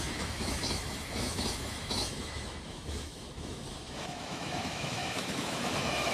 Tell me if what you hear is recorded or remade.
remade